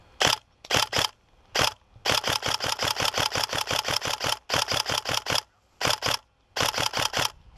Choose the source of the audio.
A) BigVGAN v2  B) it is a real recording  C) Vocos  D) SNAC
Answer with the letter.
B